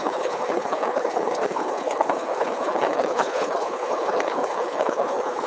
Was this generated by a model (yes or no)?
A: yes